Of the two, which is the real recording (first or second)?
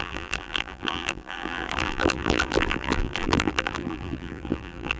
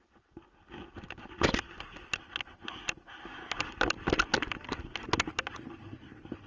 second